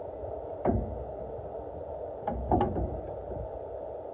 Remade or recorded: recorded